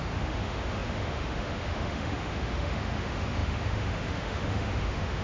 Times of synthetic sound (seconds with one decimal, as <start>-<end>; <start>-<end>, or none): 0.0-5.2